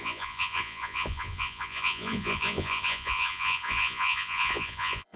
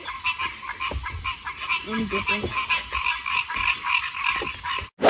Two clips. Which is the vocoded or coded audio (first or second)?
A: first